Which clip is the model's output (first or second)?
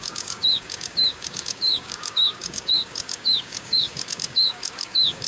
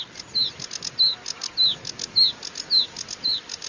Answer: first